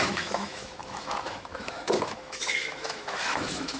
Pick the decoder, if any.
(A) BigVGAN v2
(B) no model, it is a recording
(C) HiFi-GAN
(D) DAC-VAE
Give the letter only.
D